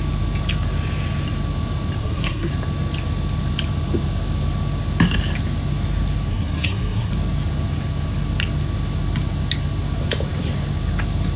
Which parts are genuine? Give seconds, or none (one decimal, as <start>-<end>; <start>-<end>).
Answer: 0.0-2.0; 2.5-6.3; 7.1-11.4